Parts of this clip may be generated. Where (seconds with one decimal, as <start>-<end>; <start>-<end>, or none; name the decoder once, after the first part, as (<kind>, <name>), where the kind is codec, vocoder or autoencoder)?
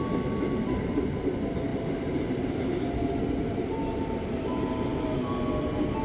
none